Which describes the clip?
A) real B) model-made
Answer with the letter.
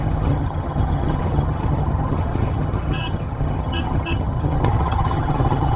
B